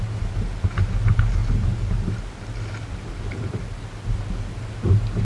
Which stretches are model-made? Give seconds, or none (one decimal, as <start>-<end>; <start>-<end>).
none